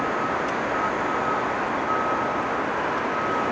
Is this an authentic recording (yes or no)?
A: yes